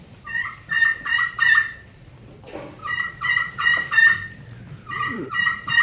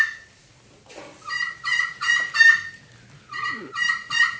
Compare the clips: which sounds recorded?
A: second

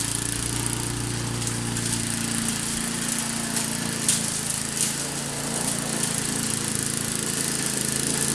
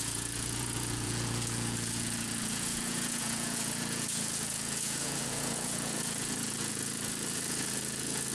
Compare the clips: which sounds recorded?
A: first